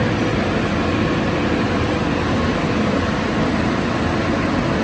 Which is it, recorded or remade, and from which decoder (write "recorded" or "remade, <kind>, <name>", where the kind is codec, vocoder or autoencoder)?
recorded